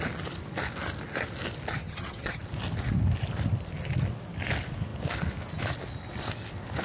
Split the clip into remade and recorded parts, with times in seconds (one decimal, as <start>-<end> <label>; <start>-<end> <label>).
0.0-1.7 recorded; 1.7-2.4 remade; 2.4-6.8 recorded